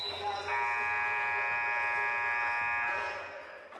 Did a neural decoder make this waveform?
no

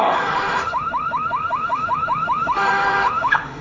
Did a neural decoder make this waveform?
yes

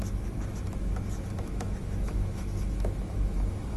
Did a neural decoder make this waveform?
yes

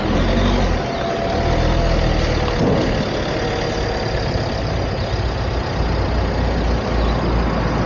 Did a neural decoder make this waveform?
no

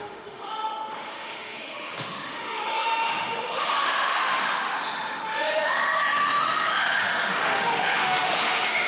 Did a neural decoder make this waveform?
yes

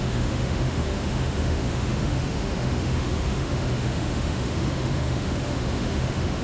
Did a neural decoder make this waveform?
yes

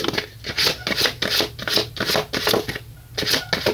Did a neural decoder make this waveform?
no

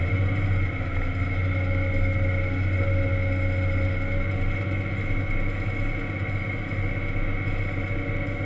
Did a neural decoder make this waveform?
no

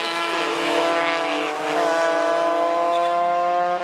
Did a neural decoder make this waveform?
yes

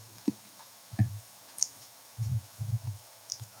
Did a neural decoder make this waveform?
yes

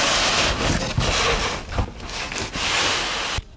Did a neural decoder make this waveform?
no